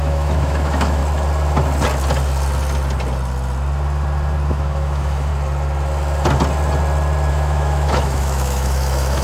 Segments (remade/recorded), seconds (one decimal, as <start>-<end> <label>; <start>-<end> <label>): 0.0-1.0 remade; 1.0-4.5 recorded; 4.5-5.3 remade; 5.3-7.3 recorded; 7.3-9.2 remade